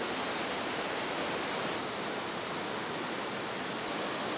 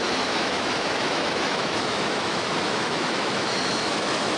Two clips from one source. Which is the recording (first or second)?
first